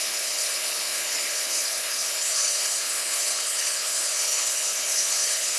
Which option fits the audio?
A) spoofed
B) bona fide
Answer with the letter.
A